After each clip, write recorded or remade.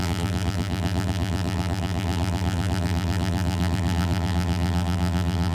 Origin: remade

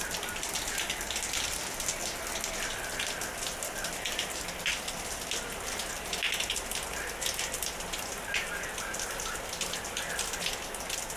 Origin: recorded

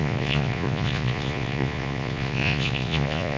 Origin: remade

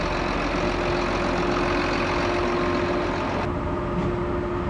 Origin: recorded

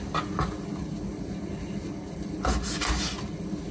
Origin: recorded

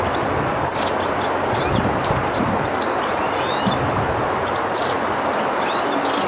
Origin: remade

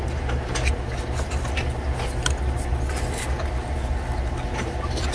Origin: recorded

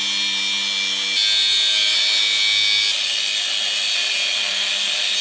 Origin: recorded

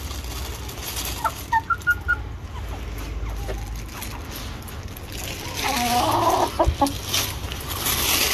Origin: recorded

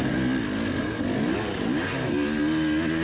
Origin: recorded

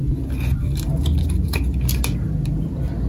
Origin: recorded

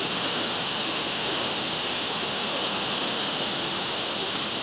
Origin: remade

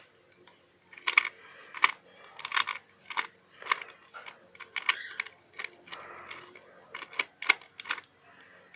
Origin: recorded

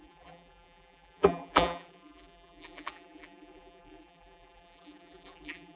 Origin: remade